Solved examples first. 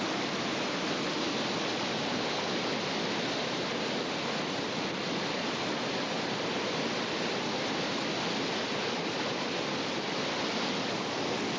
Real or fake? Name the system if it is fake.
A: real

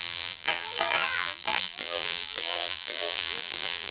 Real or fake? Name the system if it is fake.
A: fake, vocoder, BigVGAN v2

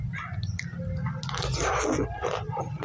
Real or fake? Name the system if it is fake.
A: real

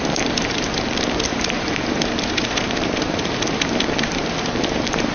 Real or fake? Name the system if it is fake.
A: fake, vocoder, BigVGAN v2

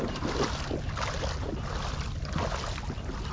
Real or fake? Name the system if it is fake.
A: real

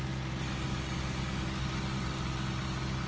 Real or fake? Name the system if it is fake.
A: real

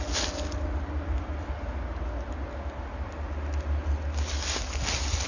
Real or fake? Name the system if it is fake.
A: real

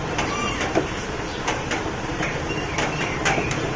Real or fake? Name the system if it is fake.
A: fake, vocoder, BigVGAN v2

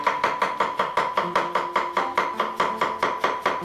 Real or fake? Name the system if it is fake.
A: fake, vocoder, BigVGAN v2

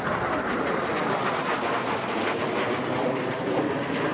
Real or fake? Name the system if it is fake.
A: fake, vocoder, BigVGAN v2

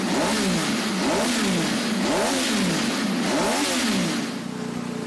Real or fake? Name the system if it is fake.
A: real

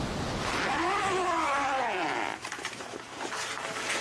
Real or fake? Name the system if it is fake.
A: real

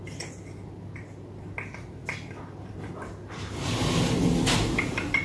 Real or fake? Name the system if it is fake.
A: real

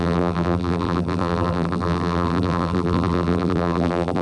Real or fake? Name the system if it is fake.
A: fake, vocoder, BigVGAN v2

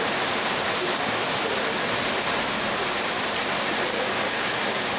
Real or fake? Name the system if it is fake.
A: real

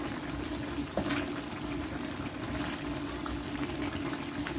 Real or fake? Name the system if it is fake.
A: fake, vocoder, BigVGAN v2